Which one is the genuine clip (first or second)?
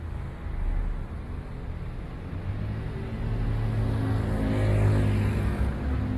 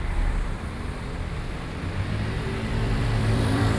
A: first